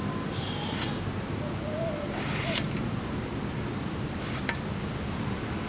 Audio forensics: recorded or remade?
recorded